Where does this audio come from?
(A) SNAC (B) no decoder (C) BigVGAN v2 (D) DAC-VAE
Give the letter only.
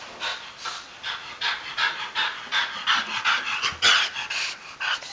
B